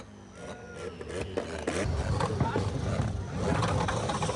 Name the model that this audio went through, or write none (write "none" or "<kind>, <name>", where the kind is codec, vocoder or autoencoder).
none